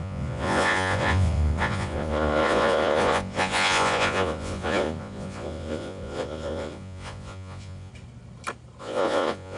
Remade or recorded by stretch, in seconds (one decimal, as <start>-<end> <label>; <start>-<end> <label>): 0.0-7.9 remade; 7.9-8.8 recorded; 8.8-9.6 remade